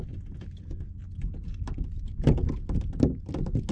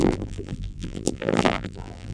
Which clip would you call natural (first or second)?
first